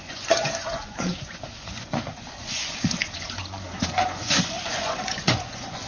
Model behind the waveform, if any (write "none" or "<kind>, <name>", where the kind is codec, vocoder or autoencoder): vocoder, Vocos